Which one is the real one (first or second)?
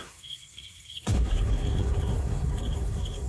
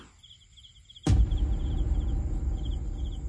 second